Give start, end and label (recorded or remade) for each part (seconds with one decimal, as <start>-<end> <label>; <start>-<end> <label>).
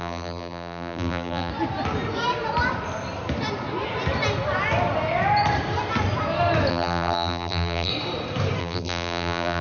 0.0-1.5 remade; 1.5-6.7 recorded; 6.7-7.9 remade; 7.9-8.6 recorded; 8.6-9.6 remade